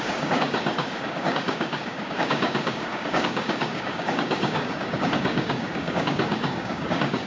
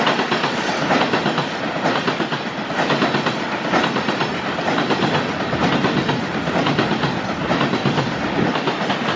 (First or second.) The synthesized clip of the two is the first